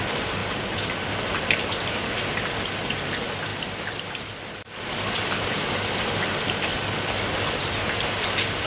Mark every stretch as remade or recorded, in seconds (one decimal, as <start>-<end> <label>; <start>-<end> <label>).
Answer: 0.0-8.7 recorded